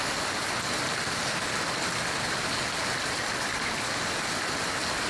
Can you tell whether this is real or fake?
real